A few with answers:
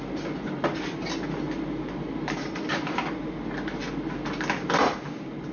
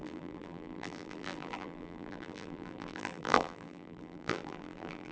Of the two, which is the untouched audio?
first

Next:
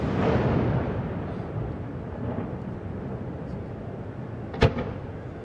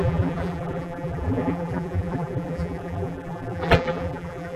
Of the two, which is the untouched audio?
first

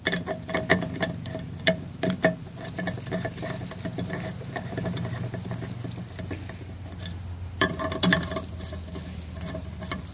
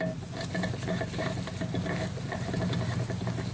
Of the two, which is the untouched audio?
second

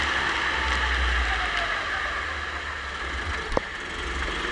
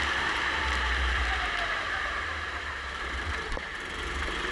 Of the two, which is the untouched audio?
first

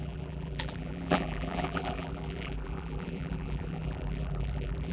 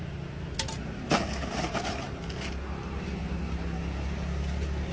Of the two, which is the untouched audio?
second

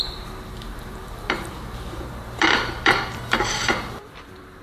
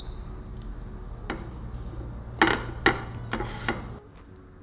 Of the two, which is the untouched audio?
second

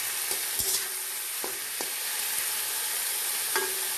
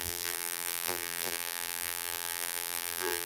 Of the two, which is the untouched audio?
first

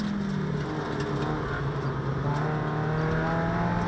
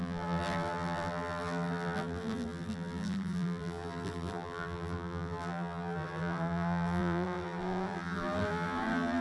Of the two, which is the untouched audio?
first